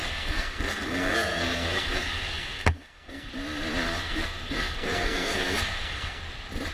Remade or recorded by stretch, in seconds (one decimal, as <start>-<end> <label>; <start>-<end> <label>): 0.0-3.3 remade; 3.3-4.0 recorded; 4.0-6.2 remade; 6.2-6.7 recorded